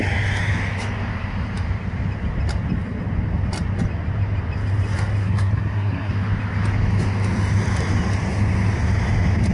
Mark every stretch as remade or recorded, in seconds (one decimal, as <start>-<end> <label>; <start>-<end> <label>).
0.0-5.2 recorded; 5.2-6.1 remade; 6.1-9.5 recorded